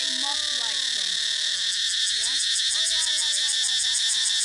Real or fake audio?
real